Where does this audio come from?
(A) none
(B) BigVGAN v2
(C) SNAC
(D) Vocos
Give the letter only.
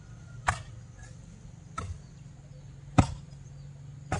A